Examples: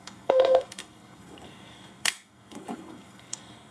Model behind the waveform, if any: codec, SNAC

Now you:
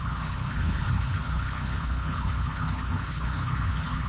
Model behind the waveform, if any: codec, HILCodec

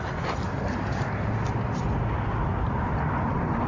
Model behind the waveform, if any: none